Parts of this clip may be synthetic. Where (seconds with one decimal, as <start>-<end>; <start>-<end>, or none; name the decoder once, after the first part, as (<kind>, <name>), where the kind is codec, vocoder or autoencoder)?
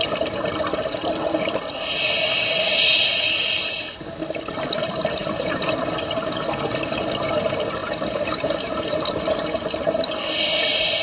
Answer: 5.2-6.0 (vocoder, BigVGAN v2); 7.8-9.1